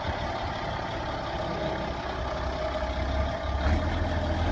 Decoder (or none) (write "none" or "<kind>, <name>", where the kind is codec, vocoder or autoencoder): none